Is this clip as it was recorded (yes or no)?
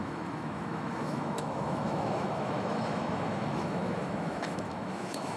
no